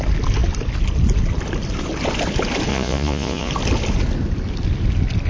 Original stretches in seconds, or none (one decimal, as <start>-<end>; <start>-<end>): 0.0-2.7; 3.5-5.3